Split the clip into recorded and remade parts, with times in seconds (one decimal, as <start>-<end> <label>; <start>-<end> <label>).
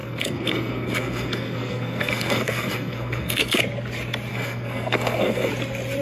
0.0-3.6 remade; 3.6-4.3 recorded; 4.3-5.5 remade; 5.5-6.0 recorded